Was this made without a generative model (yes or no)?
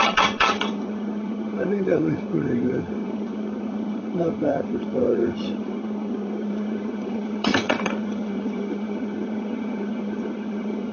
no